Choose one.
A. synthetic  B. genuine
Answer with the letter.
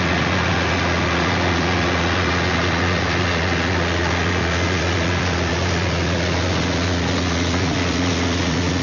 A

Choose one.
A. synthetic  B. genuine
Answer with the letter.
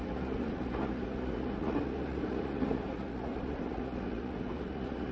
A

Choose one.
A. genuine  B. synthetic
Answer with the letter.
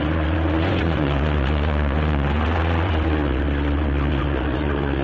B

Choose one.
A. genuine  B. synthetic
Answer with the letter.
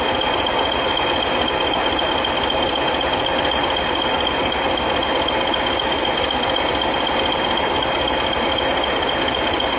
A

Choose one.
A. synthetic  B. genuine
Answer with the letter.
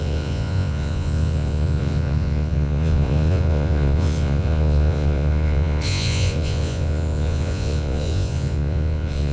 A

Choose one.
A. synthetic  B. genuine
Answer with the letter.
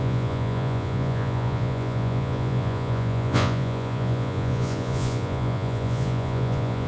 A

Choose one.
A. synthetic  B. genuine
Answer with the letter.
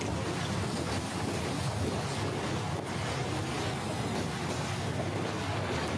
B